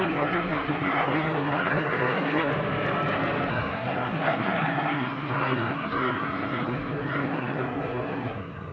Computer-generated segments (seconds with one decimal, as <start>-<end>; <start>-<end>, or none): 0.0-2.5; 3.5-8.7